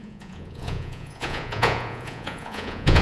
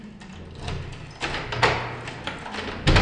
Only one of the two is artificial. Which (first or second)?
first